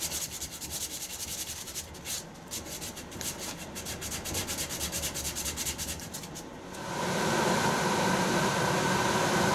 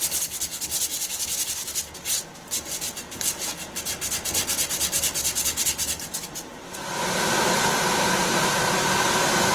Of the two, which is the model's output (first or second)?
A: first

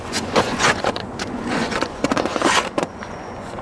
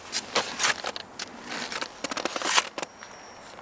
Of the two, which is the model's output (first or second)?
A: first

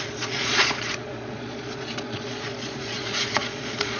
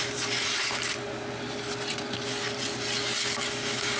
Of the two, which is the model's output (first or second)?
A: first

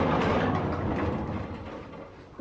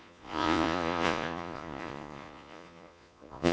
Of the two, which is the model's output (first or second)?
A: second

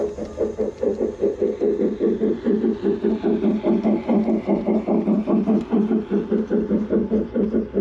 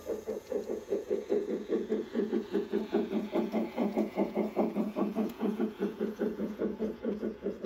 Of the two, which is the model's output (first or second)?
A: second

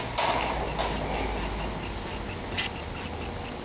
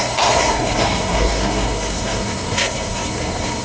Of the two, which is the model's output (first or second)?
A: second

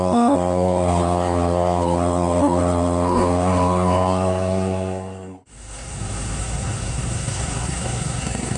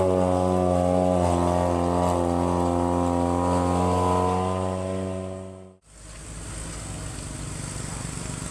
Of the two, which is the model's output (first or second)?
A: first